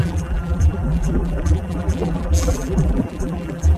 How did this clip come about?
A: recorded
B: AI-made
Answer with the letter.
B